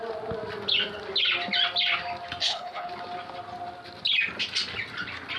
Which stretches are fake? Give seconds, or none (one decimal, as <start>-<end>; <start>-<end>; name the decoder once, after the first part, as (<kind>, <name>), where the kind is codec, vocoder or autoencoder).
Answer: 2.4-2.9 (codec, HILCodec)